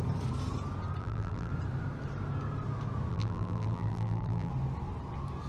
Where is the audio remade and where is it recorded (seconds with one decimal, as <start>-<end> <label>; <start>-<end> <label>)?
0.0-1.0 recorded; 1.0-1.5 remade; 1.5-3.1 recorded; 3.1-4.5 remade; 4.5-5.5 recorded